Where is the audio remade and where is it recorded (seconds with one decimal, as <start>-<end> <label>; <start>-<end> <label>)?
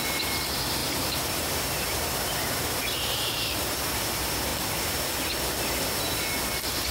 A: 0.0-0.8 recorded; 0.8-3.7 remade; 3.7-6.9 recorded